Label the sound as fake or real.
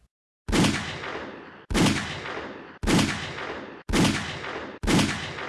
real